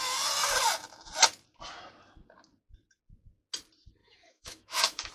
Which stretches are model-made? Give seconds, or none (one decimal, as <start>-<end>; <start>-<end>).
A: 4.0-5.1